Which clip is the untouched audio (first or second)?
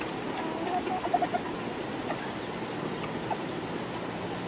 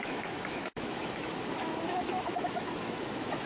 first